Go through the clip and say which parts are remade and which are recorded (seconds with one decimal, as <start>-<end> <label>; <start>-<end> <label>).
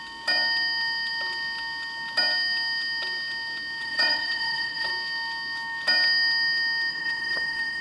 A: 0.0-3.8 recorded; 3.8-4.9 remade; 4.9-6.9 recorded; 6.9-7.8 remade